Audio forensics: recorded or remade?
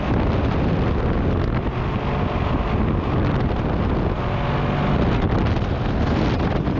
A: recorded